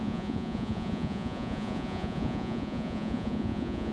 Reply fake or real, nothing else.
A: fake